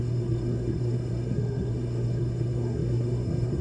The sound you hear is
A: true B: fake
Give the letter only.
B